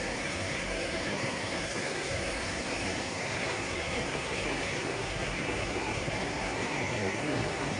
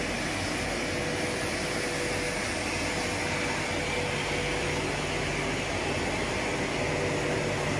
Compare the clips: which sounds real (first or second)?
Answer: second